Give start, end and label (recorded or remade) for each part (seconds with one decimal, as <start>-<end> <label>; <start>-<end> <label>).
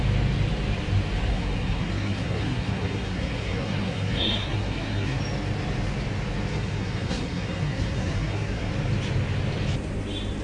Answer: 0.0-1.3 recorded; 1.3-5.2 remade; 5.2-6.5 recorded; 6.5-8.7 remade; 8.7-10.4 recorded